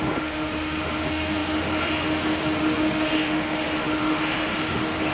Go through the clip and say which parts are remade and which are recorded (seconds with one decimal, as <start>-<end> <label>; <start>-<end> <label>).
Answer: 0.0-5.1 remade